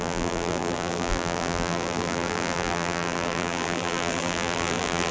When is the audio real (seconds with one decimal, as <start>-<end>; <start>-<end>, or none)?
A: none